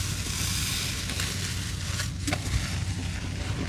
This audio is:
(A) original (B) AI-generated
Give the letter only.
A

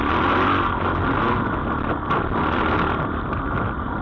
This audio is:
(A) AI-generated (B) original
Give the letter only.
B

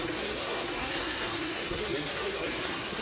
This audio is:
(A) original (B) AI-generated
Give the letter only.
B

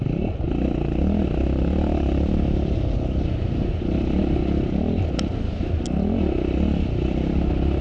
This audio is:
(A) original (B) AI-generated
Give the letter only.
A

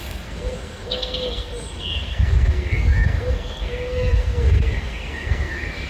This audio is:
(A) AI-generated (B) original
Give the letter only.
A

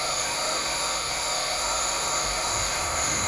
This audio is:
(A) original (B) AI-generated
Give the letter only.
B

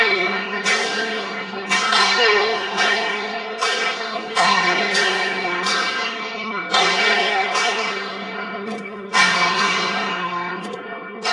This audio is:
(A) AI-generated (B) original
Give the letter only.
A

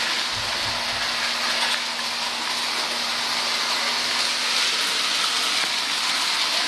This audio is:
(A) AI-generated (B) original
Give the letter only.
B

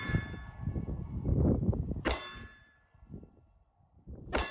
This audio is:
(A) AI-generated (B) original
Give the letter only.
A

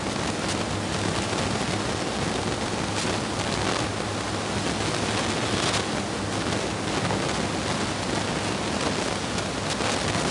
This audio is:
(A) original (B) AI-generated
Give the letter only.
A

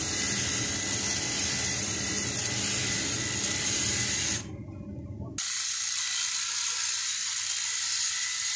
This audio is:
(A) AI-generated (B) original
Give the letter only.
B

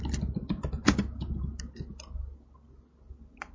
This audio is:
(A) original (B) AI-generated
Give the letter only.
A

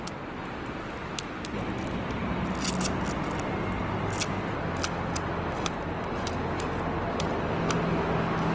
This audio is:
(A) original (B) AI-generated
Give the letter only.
A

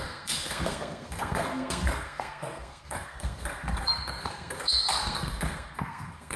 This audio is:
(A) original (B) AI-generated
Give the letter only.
B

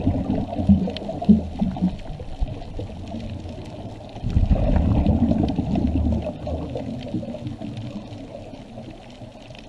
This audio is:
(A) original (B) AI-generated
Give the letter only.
A